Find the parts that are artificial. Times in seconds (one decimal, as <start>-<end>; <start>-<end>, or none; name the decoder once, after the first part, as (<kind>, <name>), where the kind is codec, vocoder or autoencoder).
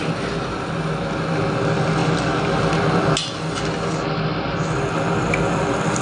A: none